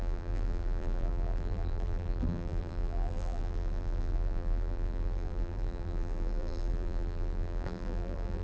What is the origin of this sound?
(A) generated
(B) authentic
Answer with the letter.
A